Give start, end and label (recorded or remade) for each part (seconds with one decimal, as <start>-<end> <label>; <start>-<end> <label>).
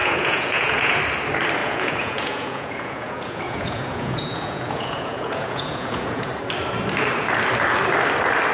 0.0-1.0 remade; 1.0-1.6 recorded; 1.6-6.3 remade; 6.3-8.5 recorded